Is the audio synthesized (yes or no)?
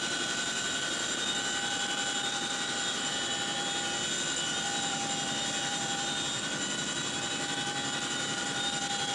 yes